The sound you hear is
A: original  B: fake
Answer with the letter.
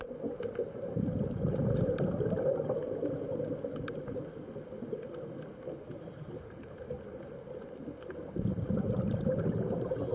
A